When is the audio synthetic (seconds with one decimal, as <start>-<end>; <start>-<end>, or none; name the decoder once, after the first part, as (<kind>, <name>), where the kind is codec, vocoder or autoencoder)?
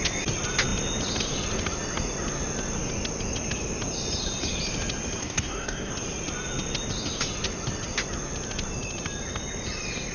5.2-5.9 (codec, SNAC)